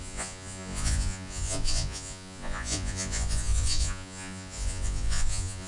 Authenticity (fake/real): fake